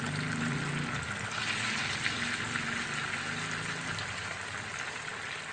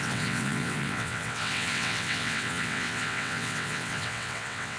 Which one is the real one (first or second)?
first